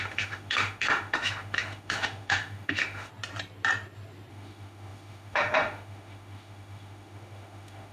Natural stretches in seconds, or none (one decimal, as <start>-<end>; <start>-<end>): 3.1-4.3